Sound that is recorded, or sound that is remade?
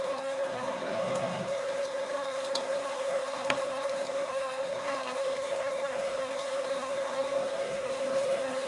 remade